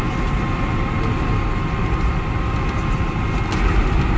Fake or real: real